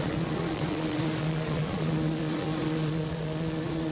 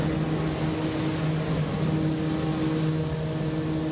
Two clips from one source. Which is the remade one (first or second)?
first